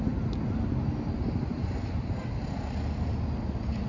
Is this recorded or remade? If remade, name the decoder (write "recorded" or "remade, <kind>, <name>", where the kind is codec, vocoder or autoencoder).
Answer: recorded